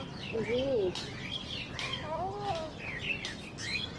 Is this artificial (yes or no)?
no